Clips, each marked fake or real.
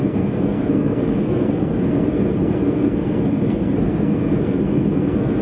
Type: fake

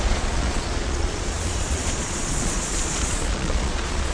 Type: fake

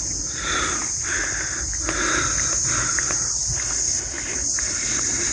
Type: real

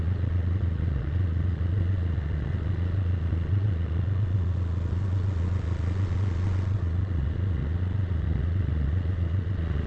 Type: fake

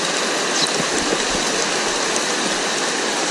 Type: real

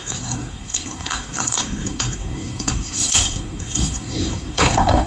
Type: fake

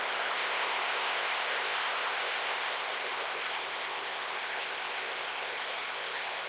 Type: fake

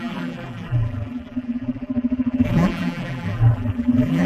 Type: fake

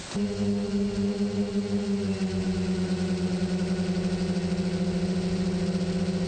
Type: real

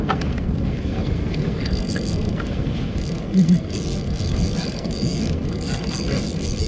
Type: fake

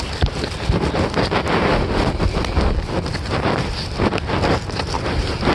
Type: real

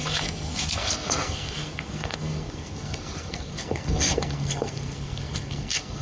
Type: fake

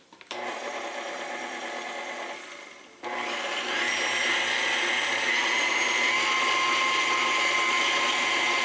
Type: real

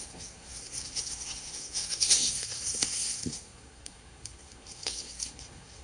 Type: fake